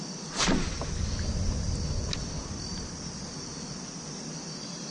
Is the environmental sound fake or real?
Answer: real